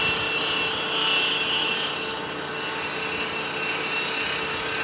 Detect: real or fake real